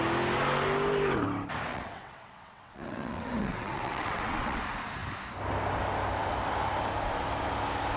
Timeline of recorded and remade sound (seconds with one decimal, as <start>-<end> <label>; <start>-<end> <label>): 0.0-1.7 recorded; 1.7-4.6 remade; 4.6-8.0 recorded